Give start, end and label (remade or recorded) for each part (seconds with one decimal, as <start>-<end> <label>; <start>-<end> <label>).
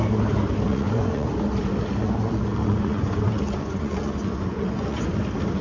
0.0-0.7 recorded; 0.7-1.3 remade; 1.3-2.6 recorded; 2.6-5.0 remade; 5.0-5.6 recorded